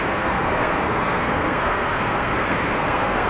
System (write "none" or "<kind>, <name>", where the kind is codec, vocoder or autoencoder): codec, SNAC